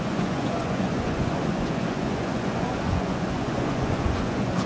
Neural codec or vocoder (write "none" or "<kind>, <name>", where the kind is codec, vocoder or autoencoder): vocoder, Vocos